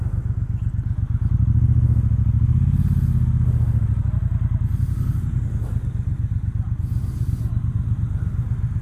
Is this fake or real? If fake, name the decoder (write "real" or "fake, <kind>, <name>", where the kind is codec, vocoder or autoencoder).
real